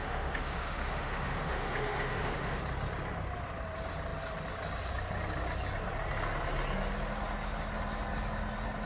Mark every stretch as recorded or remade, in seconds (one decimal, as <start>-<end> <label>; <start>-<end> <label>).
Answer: 0.0-2.6 remade; 2.6-8.9 recorded